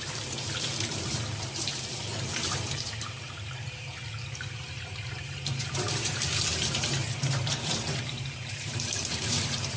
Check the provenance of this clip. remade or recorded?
remade